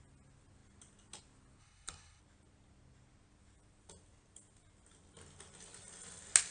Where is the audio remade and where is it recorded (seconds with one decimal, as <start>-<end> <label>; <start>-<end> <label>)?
0.0-1.6 recorded; 1.6-2.2 remade; 2.2-6.5 recorded